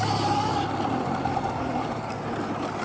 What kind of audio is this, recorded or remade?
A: recorded